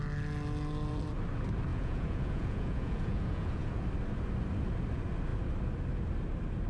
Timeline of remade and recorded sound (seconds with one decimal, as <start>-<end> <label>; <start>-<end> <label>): 0.0-1.7 recorded; 1.7-3.8 remade; 3.8-6.7 recorded